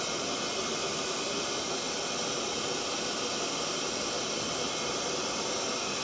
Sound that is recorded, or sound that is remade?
recorded